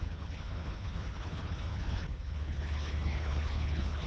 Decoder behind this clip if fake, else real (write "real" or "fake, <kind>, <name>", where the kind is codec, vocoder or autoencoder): fake, codec, HILCodec